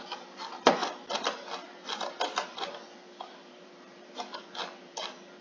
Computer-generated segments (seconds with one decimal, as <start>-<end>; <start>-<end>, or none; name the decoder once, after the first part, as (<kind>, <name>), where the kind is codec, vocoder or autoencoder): 0.0-0.8 (vocoder, BigVGAN v2); 2.0-5.4

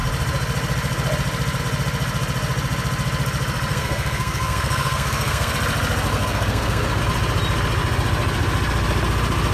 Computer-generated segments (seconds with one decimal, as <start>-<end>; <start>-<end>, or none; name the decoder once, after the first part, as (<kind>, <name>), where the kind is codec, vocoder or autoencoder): 3.7-5.5 (codec, SNAC); 6.1-7.0